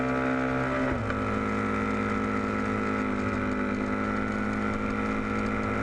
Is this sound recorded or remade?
recorded